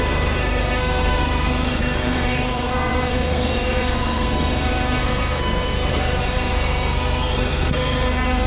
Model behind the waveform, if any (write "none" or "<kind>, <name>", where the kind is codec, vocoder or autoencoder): codec, SNAC